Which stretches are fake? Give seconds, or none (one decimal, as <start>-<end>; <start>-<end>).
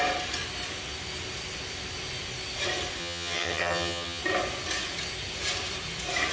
3.0-4.2